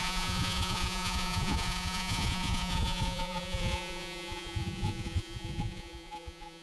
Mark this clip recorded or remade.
remade